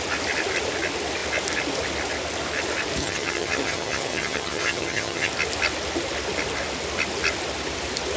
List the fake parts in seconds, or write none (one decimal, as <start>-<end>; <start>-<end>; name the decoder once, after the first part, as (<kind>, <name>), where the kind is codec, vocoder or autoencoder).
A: 3.0-5.3 (vocoder, HiFi-GAN)